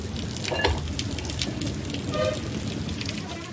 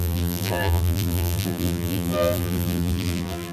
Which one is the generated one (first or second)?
second